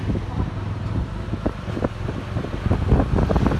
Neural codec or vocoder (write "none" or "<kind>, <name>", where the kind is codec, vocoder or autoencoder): none